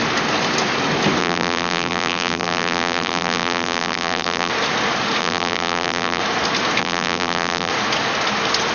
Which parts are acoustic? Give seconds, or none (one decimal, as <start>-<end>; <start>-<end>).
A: 0.0-1.2; 4.5-5.2; 6.2-6.8; 7.7-8.7

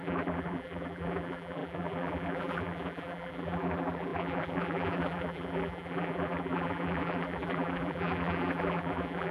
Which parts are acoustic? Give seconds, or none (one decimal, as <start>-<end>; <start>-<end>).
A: none

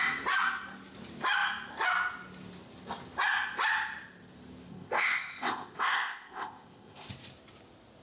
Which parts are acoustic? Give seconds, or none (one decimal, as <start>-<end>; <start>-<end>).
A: 0.0-4.7; 7.1-8.0

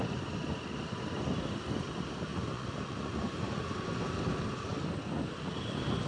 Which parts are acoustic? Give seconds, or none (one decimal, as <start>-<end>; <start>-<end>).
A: 0.0-2.3; 3.6-6.1

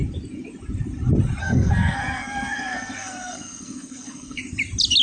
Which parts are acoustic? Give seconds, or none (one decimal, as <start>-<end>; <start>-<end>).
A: 0.0-1.4; 4.4-5.0

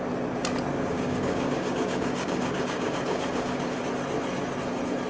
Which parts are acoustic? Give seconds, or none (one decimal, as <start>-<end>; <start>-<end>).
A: 0.0-0.9; 3.8-5.1